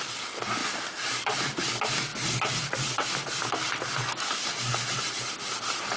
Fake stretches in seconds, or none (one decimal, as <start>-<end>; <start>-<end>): 0.6-1.6